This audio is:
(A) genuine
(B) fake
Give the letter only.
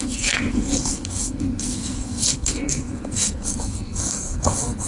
B